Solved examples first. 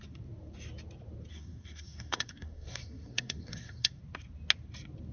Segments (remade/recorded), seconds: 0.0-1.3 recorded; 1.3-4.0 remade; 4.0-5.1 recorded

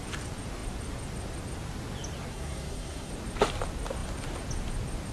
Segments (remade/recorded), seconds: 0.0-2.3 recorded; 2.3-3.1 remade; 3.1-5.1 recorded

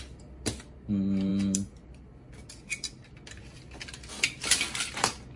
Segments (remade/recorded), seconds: 0.0-5.4 recorded

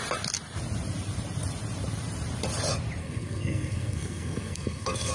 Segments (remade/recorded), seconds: 0.0-3.0 recorded; 3.0-5.1 remade

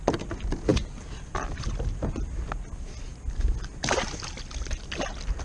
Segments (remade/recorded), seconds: 0.0-5.4 recorded

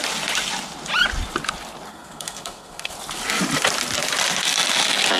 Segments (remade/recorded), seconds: 0.0-1.9 recorded; 1.9-2.9 remade; 2.9-5.2 recorded